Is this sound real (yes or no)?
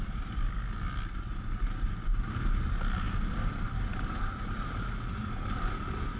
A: yes